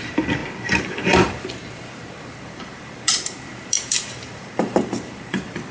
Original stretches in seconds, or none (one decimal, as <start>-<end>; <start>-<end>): none